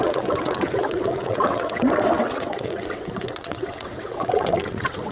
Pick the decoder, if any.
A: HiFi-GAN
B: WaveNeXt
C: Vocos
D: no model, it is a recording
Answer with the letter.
B